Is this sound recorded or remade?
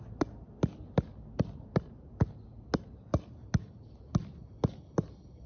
recorded